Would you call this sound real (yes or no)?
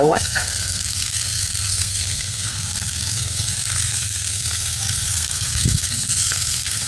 no